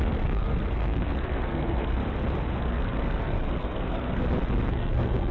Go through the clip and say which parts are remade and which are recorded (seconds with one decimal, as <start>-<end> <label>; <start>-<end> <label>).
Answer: 0.0-2.0 remade; 2.0-2.6 recorded; 2.6-4.2 remade; 4.2-4.7 recorded; 4.7-5.3 remade